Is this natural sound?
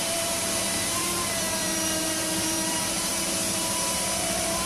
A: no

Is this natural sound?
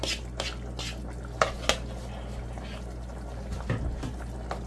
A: yes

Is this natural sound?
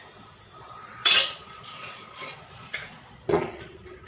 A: no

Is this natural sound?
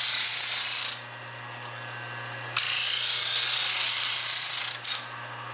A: yes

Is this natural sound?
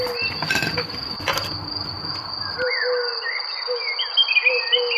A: yes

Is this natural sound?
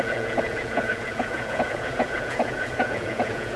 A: no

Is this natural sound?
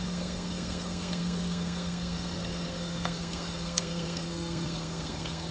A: no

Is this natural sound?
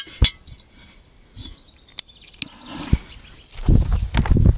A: yes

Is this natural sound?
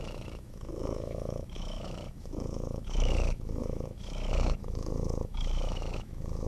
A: no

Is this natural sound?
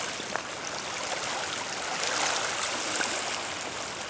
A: yes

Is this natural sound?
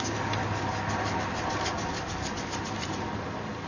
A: yes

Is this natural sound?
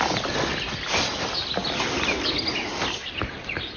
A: yes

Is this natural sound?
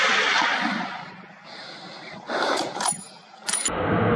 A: yes